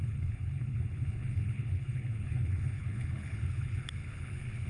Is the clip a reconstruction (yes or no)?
yes